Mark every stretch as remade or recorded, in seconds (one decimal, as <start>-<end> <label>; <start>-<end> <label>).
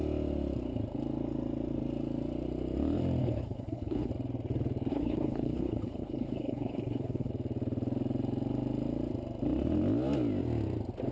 0.0-3.2 recorded; 3.2-4.1 remade; 4.1-4.9 recorded; 4.9-7.3 remade; 7.3-11.1 recorded